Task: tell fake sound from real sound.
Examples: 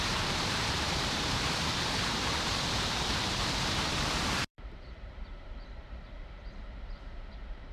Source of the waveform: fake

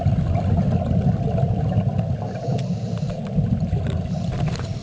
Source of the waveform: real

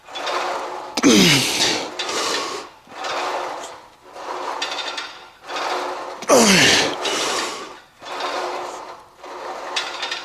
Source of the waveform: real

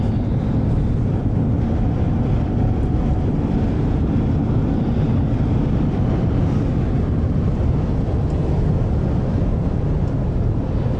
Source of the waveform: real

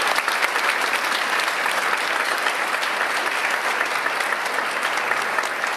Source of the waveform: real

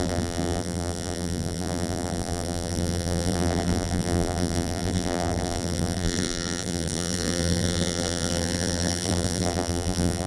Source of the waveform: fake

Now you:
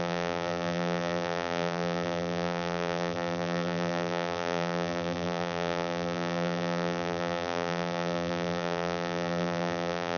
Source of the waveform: fake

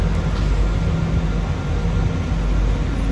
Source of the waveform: real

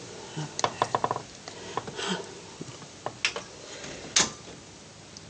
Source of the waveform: real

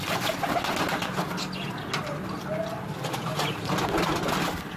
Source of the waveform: real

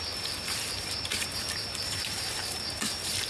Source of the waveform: fake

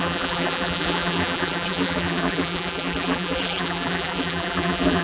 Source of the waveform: fake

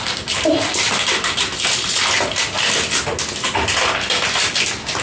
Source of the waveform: real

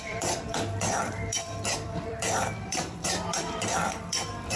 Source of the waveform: fake